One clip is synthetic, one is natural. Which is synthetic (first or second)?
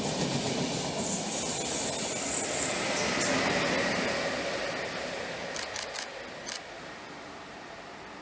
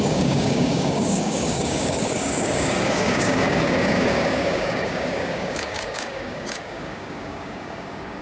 second